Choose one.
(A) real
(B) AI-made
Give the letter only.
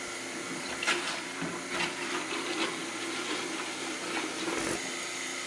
B